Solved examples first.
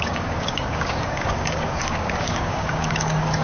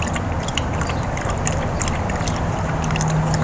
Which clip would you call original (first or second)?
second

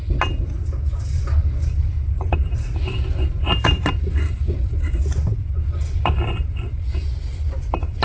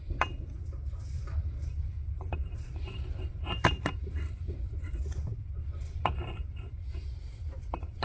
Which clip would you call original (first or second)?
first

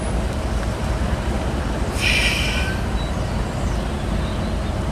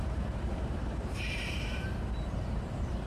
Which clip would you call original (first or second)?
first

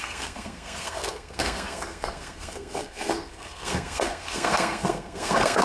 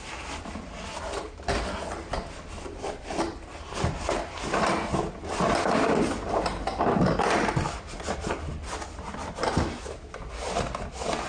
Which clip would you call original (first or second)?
second